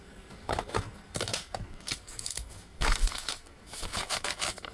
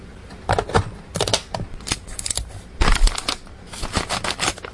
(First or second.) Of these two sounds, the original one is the second